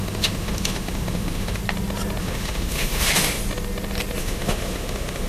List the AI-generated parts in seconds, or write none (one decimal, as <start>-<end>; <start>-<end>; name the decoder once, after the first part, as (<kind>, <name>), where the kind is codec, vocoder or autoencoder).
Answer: 0.0-1.6 (autoencoder, DAC-VAE); 2.2-3.4; 4.2-5.3